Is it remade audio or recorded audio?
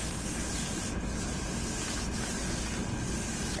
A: recorded